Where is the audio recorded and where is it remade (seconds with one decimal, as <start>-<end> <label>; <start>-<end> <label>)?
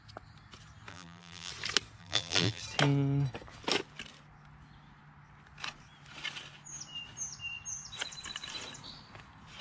0.0-0.9 recorded; 0.9-1.5 remade; 1.5-2.0 recorded; 2.0-2.6 remade; 2.6-9.6 recorded